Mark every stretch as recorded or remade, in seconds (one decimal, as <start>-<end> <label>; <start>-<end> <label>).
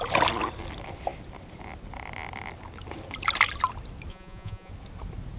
0.0-4.1 recorded; 4.1-4.7 remade; 4.7-5.4 recorded